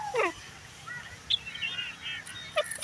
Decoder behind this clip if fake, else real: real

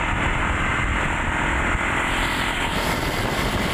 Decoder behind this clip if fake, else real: real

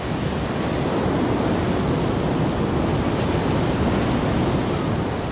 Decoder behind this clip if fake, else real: real